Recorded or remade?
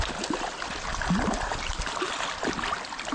recorded